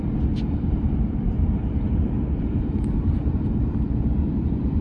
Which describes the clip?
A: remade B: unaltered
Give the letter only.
A